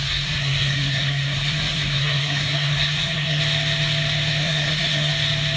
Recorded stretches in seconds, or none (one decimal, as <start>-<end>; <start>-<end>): 3.4-4.4; 5.1-5.6